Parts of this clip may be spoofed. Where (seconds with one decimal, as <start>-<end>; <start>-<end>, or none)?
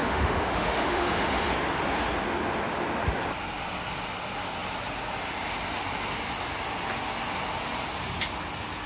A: 0.0-1.5